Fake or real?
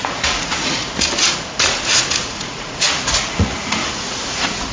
fake